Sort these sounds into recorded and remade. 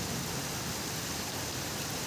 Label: recorded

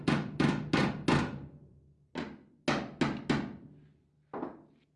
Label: recorded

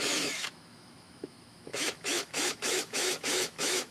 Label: remade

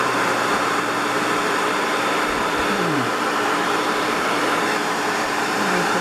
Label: remade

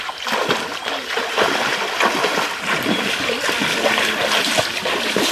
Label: recorded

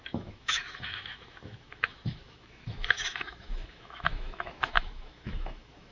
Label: remade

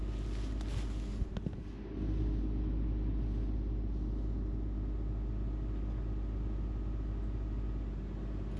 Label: recorded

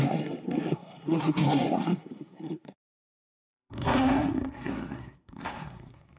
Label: remade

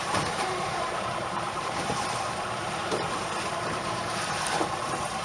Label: remade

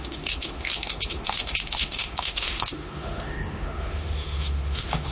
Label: remade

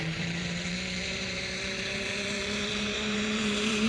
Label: remade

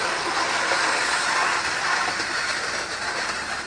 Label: recorded